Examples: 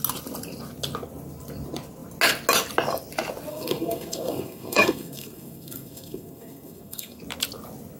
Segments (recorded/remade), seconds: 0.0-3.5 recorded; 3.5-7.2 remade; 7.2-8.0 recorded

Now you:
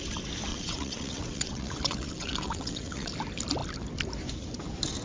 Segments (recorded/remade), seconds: 0.0-0.5 recorded; 0.5-3.1 remade; 3.1-5.0 recorded

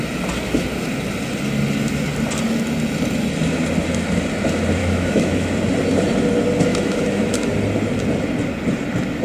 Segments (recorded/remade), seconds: 0.0-4.8 recorded; 4.8-5.5 remade; 5.5-6.7 recorded; 6.7-7.5 remade; 7.5-9.2 recorded

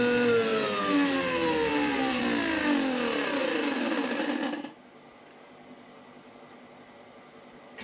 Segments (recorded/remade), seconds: 0.0-0.5 recorded; 0.5-2.2 remade; 2.2-7.8 recorded

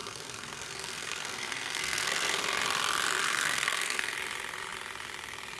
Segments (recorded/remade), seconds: 0.0-2.4 remade; 2.4-3.2 recorded; 3.2-4.1 remade; 4.1-5.6 recorded